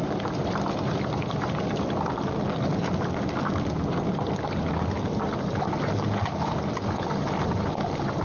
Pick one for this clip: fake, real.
real